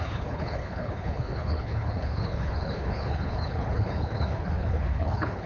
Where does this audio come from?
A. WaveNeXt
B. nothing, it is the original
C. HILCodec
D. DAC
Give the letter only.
C